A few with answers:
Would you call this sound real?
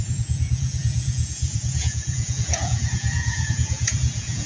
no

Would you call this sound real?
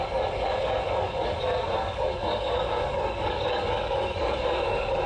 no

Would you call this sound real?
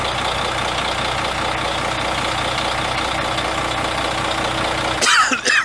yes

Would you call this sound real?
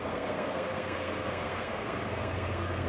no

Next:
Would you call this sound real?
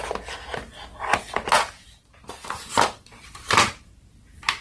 yes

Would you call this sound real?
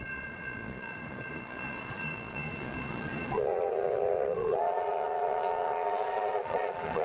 no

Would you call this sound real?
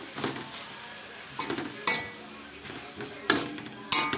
yes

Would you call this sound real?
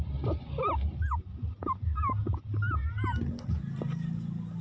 yes